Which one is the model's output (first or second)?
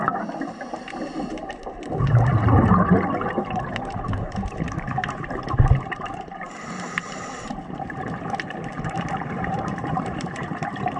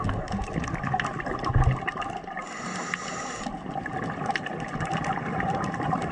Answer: first